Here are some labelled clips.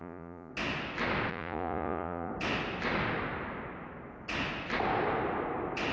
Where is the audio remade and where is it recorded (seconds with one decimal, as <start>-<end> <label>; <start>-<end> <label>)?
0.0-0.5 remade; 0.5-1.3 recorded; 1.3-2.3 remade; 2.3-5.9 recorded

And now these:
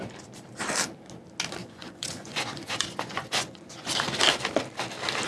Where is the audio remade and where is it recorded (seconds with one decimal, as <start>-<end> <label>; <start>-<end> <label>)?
0.0-1.6 recorded; 1.6-3.9 remade; 3.9-5.3 recorded

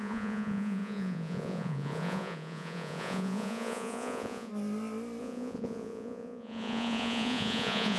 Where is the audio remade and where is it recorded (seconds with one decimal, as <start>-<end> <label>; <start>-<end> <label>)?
0.0-4.5 remade; 4.5-5.2 recorded; 5.2-8.0 remade

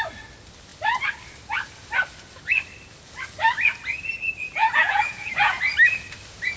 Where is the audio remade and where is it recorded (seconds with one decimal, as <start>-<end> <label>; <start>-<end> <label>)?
0.0-4.6 recorded; 4.6-5.6 remade; 5.6-6.6 recorded

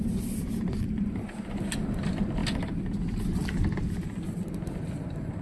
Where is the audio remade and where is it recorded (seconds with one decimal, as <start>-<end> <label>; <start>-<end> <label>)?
0.0-5.4 recorded